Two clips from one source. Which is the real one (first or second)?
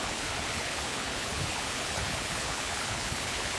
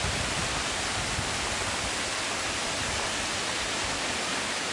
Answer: second